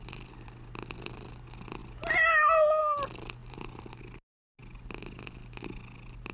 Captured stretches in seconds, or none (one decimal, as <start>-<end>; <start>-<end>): 0.0-3.4; 4.0-6.3